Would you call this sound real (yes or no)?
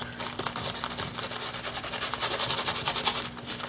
yes